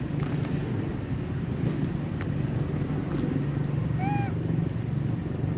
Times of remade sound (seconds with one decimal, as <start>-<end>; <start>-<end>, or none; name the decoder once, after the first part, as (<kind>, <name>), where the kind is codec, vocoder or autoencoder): none